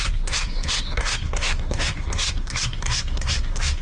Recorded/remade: remade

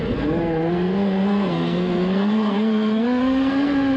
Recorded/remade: remade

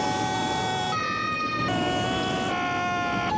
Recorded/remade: recorded